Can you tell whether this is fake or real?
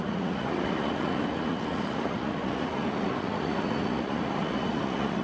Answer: fake